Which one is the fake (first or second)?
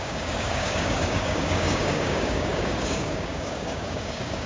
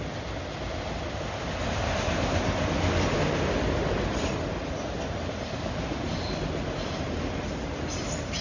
first